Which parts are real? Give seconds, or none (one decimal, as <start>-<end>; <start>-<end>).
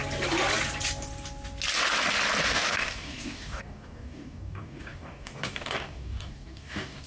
0.0-2.4